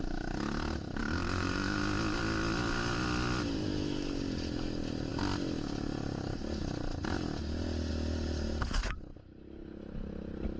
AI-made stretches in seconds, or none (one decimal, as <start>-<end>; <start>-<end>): 1.0-1.8

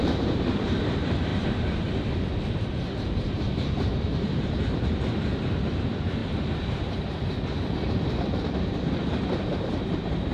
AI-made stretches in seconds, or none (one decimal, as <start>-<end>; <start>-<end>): 0.0-1.3; 2.4-6.2; 8.6-10.3